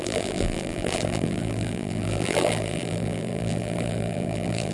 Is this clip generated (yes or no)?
yes